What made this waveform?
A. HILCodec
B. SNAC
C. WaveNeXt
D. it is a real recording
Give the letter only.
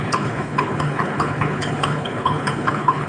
A